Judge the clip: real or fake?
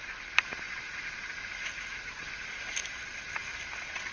real